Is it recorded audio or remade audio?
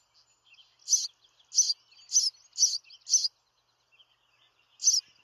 recorded